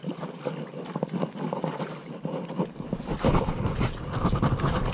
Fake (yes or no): no